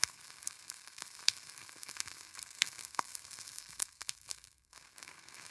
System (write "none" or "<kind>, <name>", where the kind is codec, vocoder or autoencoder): codec, SNAC